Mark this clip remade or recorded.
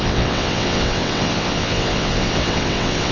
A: remade